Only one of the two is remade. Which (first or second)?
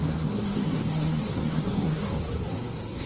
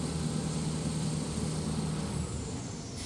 first